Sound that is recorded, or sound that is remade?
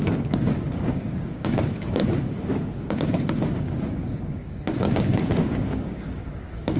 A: remade